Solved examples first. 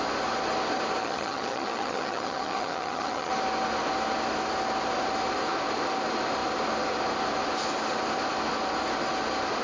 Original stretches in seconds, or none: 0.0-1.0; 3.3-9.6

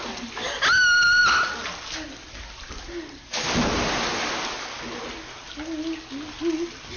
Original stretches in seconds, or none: 0.0-7.0

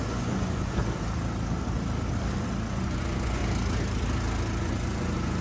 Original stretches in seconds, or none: 0.8-2.7; 3.4-4.6

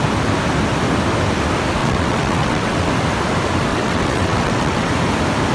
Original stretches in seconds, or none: 0.0-1.8; 2.9-3.7; 4.9-5.5

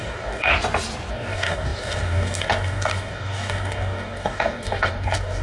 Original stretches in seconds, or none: 0.5-1.1

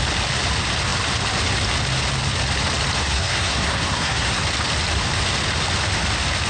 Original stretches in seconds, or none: 0.0-3.0; 4.4-6.5